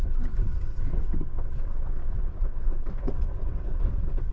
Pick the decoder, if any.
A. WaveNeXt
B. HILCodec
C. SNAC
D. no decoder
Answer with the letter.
A